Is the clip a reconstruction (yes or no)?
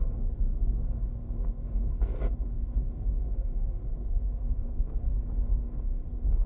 yes